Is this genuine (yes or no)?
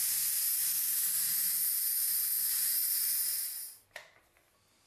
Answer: yes